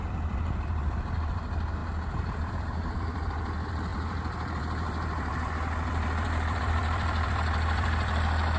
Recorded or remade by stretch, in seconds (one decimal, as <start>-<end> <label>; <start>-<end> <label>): 0.0-8.6 remade